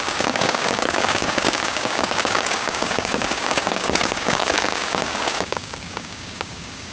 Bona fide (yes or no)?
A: no